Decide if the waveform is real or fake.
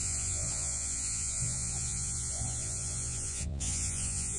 fake